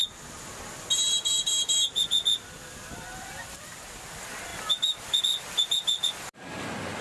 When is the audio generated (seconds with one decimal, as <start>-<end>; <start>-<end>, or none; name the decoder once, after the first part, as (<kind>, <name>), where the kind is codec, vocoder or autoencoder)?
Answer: none